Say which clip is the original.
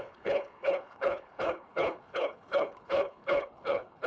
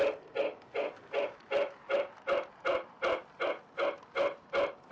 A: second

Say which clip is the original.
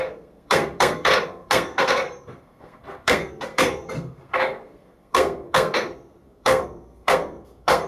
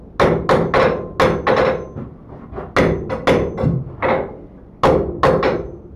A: second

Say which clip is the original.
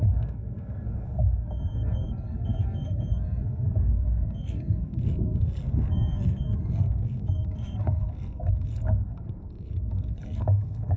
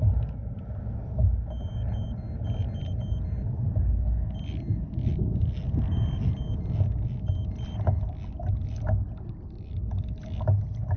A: second